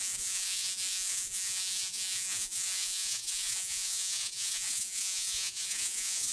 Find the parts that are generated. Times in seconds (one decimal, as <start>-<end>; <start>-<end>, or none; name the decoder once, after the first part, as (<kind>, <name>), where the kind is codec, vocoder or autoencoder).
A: 0.0-6.3 (vocoder, Vocos)